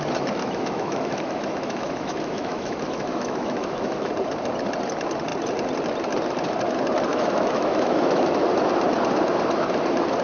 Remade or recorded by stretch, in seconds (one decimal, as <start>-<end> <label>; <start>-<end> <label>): 0.0-0.4 recorded; 0.4-4.1 remade; 4.1-7.1 recorded; 7.1-8.4 remade; 8.4-10.2 recorded